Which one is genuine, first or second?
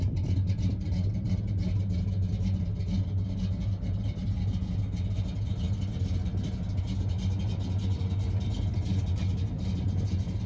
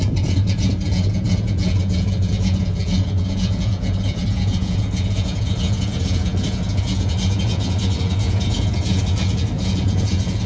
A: first